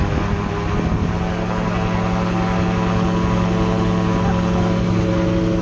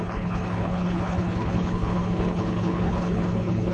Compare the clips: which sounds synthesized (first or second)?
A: second